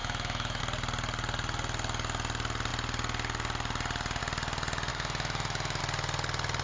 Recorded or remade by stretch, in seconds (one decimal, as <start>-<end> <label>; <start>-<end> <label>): 0.0-0.6 remade; 0.6-4.9 recorded; 4.9-5.8 remade; 5.8-6.6 recorded